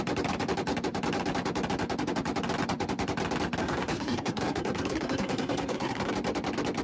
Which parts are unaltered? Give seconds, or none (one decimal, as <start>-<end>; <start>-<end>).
0.0-3.6; 6.1-6.8